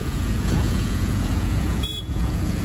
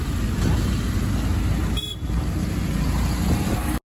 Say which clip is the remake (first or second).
first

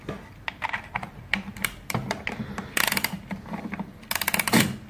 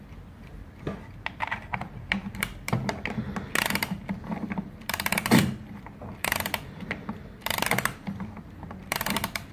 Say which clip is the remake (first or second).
second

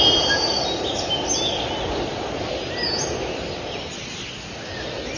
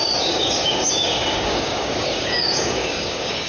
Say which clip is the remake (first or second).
second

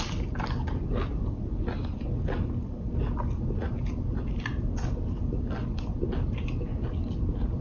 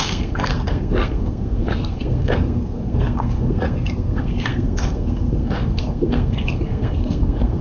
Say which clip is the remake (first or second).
second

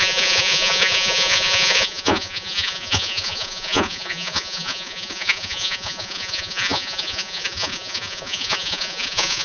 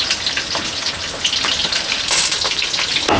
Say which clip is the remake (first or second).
first